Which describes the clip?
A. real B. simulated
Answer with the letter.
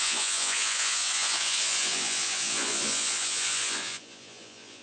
B